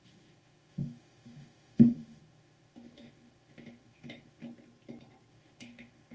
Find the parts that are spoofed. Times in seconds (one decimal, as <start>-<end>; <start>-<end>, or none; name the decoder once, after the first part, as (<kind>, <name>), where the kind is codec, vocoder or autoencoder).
0.0-4.4 (autoencoder, DAC-VAE); 5.3-6.1